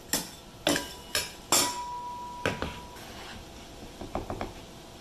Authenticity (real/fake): real